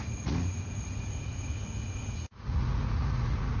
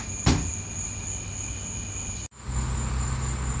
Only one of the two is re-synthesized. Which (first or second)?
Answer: first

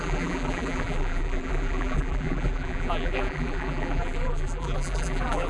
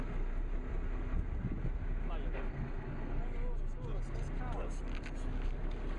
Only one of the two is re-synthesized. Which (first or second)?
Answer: first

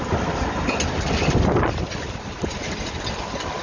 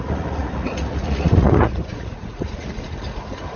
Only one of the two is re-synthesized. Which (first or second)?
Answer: second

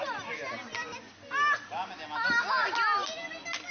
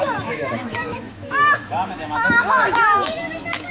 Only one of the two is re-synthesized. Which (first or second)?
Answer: second